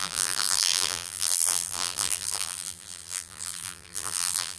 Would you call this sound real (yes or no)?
no